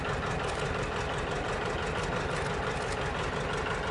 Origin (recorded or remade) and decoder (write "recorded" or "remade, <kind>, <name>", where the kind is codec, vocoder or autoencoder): recorded